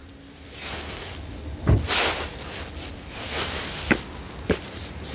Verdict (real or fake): fake